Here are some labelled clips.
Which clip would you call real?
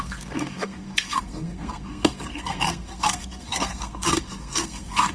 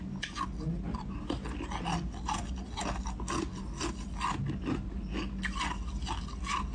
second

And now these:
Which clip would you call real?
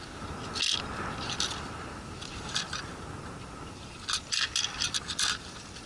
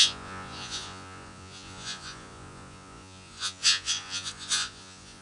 first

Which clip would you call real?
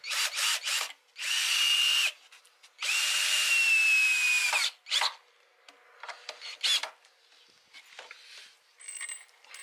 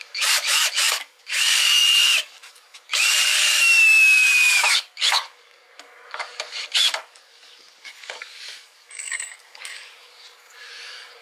first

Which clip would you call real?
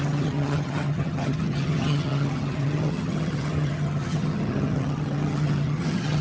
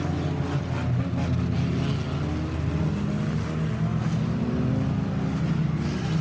second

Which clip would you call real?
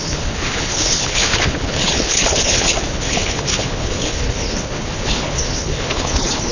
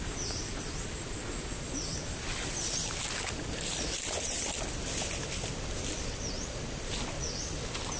second